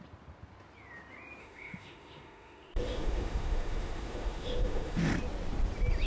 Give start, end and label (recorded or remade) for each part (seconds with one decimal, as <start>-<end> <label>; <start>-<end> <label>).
0.0-1.4 recorded; 1.4-5.1 remade; 5.1-6.1 recorded